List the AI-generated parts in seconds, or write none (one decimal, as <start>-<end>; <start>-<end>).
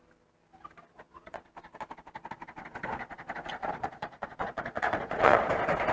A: 0.9-1.5; 3.5-5.5